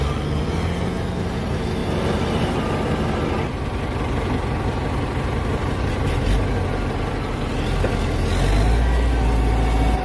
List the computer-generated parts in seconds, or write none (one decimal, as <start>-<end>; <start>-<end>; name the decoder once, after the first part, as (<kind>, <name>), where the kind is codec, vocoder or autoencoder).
none